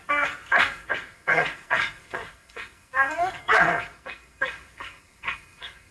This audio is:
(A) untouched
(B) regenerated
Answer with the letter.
B